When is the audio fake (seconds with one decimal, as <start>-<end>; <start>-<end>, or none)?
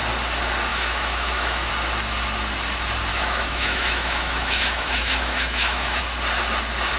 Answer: 0.7-1.7; 3.1-6.0